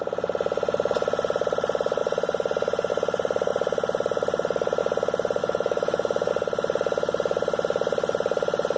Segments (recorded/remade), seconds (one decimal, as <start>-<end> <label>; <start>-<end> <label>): 0.0-5.4 recorded; 5.4-6.3 remade; 6.3-8.8 recorded